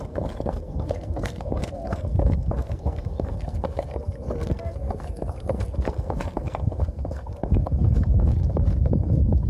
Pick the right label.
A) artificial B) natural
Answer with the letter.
A